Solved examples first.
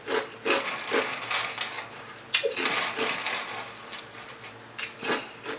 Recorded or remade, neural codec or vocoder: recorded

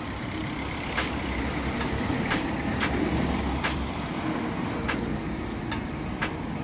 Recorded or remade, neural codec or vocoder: remade, vocoder, BigVGAN v2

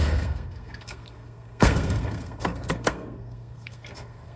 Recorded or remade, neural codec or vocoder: remade, codec, SNAC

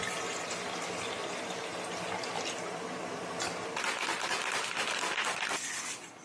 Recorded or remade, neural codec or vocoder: recorded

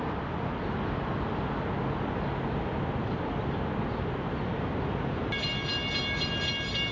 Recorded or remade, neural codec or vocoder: recorded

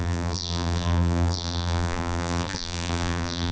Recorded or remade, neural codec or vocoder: remade, vocoder, BigVGAN v2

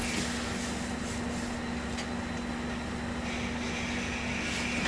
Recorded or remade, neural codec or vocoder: recorded